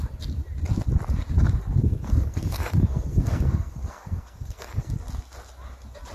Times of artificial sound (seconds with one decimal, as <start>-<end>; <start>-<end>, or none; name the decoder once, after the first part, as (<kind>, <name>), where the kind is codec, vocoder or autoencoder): 1.8-4.9 (codec, SNAC)